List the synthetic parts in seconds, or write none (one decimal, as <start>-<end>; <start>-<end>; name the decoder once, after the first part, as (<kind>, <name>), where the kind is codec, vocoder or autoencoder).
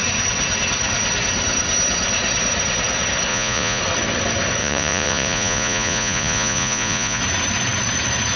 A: 3.3-3.8 (vocoder, Vocos); 4.6-7.2